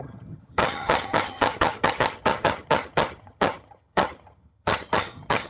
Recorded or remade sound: remade